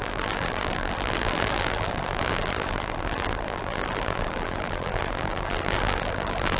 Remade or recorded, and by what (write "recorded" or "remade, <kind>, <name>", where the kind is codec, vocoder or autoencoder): remade, vocoder, BigVGAN v2